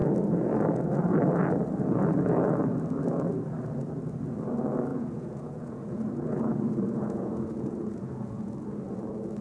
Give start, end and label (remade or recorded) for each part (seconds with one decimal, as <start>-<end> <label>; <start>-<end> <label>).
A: 0.0-4.9 recorded; 4.9-8.5 remade; 8.5-9.4 recorded